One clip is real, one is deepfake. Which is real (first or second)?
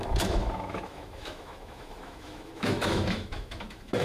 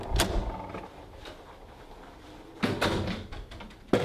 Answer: second